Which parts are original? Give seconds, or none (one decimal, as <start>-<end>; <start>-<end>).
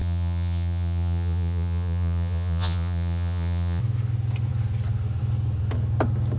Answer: 3.8-6.4